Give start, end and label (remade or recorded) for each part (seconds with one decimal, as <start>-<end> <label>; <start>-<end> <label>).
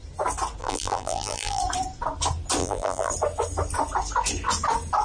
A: 0.0-0.6 recorded; 0.6-1.6 remade; 1.6-2.6 recorded; 2.6-3.1 remade; 3.1-5.0 recorded